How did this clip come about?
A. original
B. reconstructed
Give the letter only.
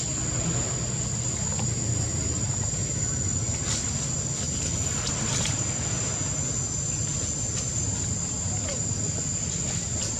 A